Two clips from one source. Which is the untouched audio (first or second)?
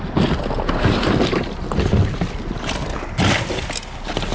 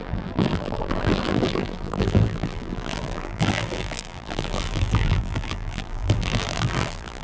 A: first